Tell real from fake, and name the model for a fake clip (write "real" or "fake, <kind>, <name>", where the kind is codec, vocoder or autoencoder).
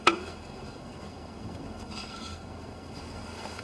fake, codec, SNAC